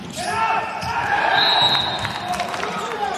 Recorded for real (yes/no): yes